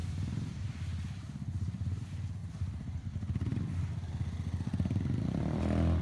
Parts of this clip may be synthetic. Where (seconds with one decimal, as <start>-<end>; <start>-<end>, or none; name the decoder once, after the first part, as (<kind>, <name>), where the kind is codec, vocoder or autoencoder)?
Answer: 2.4-3.0 (vocoder, BigVGAN v2)